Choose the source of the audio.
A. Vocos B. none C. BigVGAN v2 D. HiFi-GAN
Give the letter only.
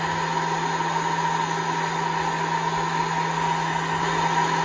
B